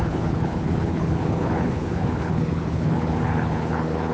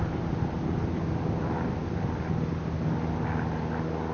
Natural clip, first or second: second